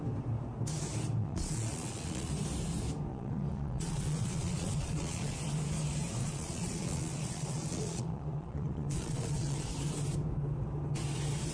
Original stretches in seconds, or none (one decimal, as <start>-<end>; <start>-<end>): 0.0-1.2; 2.3-3.1; 5.4-6.2; 9.7-11.5